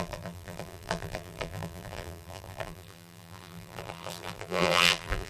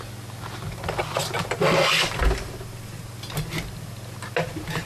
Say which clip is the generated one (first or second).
first